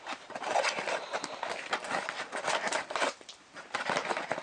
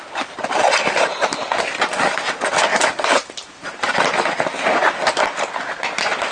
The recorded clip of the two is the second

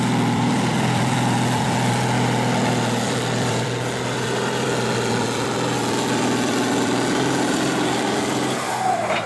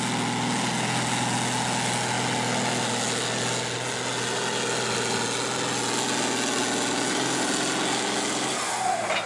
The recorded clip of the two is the second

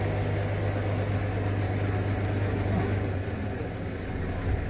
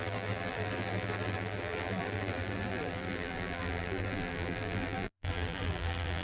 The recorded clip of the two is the first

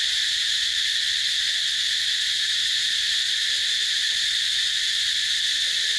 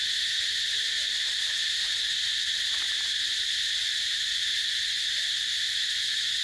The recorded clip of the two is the second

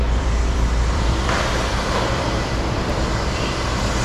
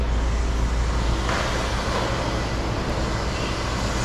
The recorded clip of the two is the second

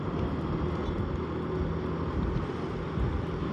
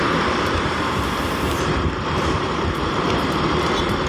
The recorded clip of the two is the first